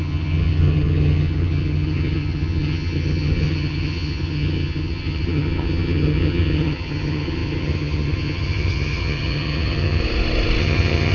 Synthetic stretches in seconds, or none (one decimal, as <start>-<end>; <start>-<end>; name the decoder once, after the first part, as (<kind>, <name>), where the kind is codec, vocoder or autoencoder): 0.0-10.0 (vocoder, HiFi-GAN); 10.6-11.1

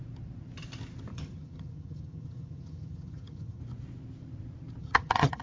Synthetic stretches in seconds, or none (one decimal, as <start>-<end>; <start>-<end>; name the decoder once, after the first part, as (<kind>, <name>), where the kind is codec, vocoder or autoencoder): 1.1-3.6 (vocoder, HiFi-GAN); 4.8-5.4

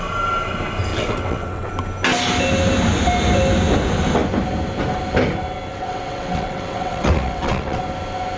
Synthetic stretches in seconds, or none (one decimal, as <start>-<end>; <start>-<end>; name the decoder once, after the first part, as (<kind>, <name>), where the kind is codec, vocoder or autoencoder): 0.9-1.7 (vocoder, WaveNeXt); 5.7-7.8

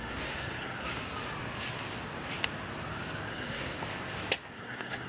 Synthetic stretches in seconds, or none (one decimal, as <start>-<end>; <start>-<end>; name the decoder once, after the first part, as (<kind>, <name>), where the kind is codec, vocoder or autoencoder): 0.0-0.9 (codec, SNAC); 3.3-3.8; 4.5-5.1

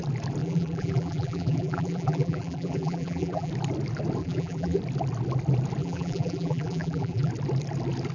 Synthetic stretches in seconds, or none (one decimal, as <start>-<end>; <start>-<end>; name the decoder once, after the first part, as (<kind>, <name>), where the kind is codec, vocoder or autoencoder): 0.4-3.5 (vocoder, BigVGAN v2); 4.2-4.8; 5.8-7.3